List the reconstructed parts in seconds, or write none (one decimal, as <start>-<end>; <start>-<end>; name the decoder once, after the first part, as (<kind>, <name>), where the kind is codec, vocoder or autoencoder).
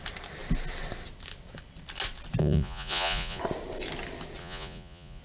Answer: 2.4-3.4 (vocoder, Vocos); 4.4-5.2